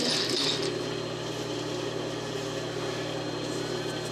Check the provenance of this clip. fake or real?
real